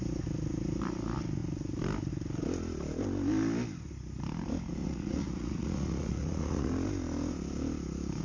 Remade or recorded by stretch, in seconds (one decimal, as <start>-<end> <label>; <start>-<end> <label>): 0.0-4.8 recorded; 4.8-6.7 remade; 6.7-8.2 recorded